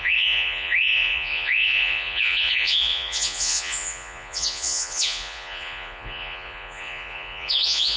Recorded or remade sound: remade